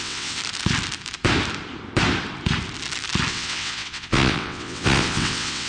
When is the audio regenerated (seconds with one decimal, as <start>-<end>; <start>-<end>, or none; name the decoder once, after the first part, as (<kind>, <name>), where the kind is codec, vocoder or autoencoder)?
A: 0.0-0.4 (vocoder, WaveNeXt); 3.3-5.7